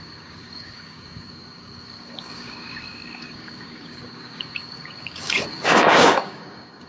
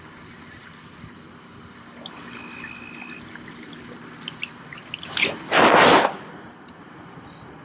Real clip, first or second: second